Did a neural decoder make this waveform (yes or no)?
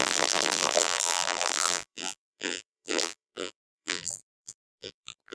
yes